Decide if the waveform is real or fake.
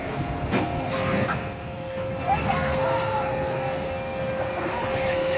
fake